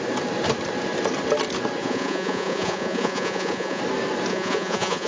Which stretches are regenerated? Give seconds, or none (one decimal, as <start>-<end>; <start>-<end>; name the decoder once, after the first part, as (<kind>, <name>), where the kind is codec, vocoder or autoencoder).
1.8-3.8 (vocoder, Vocos); 4.3-5.1